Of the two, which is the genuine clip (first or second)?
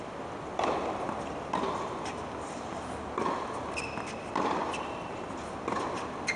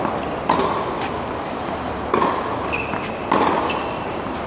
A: first